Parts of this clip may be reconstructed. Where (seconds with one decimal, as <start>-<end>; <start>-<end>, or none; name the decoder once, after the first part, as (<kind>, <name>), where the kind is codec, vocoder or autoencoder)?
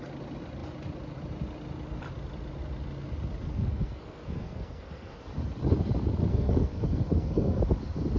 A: 3.5-5.2 (codec, SNAC); 6.3-7.6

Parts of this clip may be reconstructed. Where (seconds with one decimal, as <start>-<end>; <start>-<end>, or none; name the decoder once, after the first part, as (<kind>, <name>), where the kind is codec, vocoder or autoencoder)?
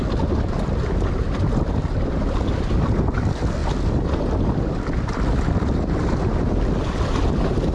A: none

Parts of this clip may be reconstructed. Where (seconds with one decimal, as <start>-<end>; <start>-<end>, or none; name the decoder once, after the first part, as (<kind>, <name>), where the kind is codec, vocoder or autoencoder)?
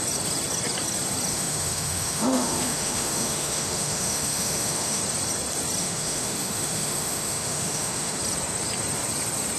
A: 1.3-5.0 (autoencoder, DAC-VAE); 5.8-8.2